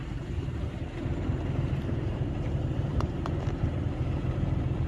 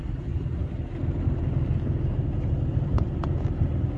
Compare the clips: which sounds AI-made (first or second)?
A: first